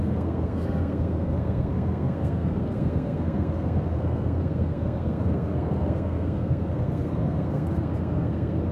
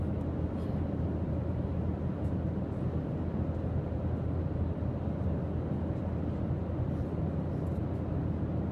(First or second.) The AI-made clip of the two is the first